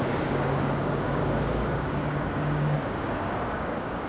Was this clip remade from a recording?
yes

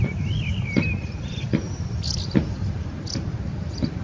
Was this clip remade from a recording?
no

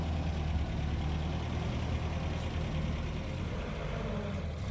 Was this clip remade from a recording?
no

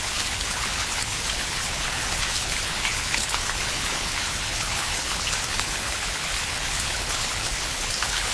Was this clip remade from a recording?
yes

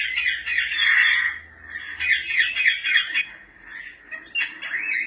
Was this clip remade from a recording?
no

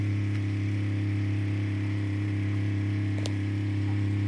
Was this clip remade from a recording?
yes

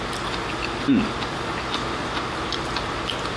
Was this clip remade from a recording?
no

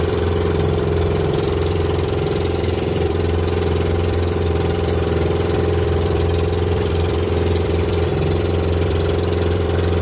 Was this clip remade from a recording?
yes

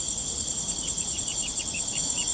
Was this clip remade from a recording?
yes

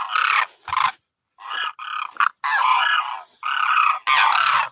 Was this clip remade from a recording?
no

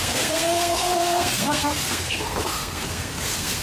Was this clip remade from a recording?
yes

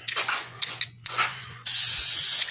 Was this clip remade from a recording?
yes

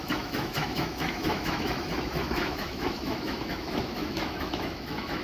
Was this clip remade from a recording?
yes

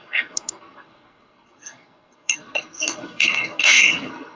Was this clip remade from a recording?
yes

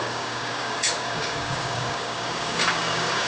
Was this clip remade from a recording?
yes